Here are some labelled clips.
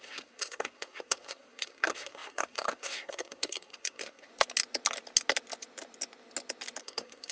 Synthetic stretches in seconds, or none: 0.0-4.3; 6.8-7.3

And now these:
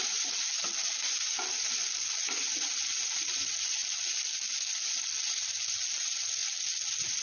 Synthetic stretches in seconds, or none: none

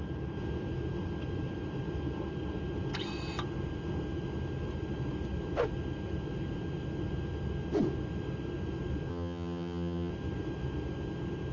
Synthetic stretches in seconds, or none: 9.1-10.1

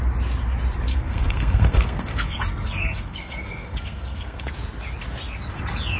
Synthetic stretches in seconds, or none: 0.9-4.5

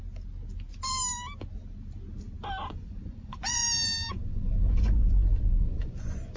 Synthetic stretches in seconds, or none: 2.7-3.6; 4.1-6.4

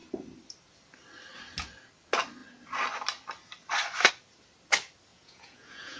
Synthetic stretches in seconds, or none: 5.1-6.0